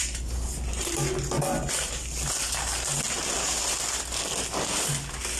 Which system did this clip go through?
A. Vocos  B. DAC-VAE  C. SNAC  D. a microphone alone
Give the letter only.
D